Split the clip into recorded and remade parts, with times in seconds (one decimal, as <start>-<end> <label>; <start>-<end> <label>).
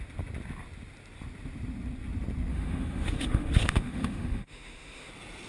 0.0-2.5 recorded; 2.5-5.1 remade; 5.1-5.5 recorded